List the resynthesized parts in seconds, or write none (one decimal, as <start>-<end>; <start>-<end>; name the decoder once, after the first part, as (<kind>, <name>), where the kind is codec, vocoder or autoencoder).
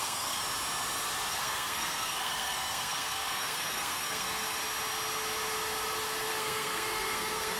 0.0-0.4 (codec, SNAC); 1.3-4.6; 6.3-7.6